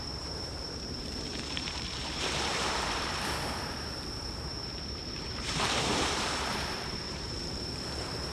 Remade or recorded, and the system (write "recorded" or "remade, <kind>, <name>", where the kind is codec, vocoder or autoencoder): remade, vocoder, BigVGAN v2